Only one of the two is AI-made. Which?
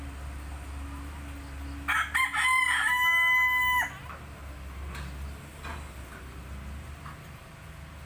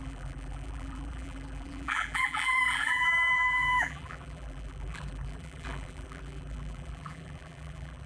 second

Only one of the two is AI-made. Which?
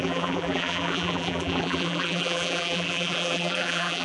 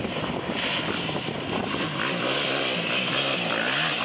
first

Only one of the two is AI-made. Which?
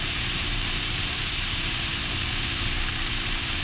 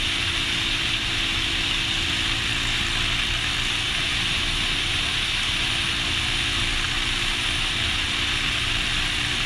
first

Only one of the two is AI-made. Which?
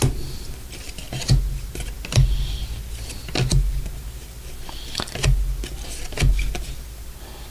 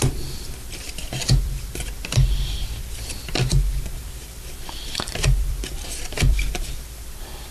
second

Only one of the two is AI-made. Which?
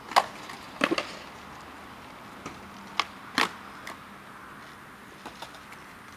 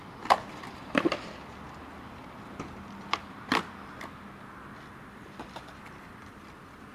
second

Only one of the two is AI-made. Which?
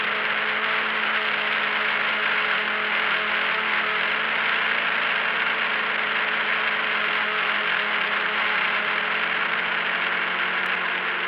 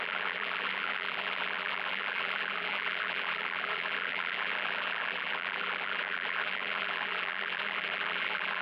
second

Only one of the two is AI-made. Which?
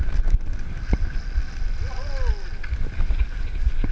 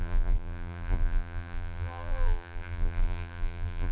second